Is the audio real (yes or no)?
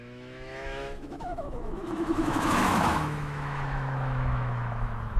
no